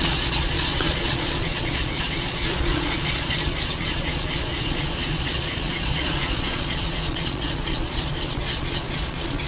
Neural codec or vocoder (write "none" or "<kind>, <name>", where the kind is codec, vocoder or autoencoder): vocoder, Vocos